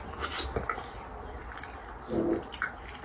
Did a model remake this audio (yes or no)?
no